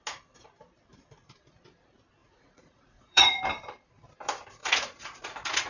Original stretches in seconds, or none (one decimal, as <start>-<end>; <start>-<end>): 0.0-2.2; 3.4-4.6